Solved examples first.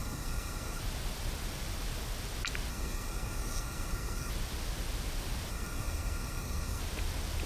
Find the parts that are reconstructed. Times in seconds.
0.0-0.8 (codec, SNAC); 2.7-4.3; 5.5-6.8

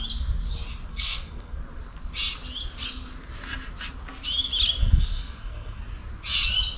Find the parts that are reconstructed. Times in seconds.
0.9-1.6 (codec, SNAC); 4.8-5.8